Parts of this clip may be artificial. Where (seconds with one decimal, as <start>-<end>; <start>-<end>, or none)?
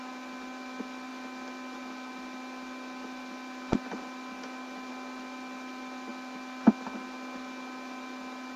none